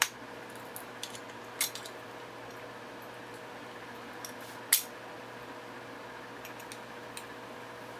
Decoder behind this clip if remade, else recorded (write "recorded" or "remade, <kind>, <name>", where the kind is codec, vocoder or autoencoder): recorded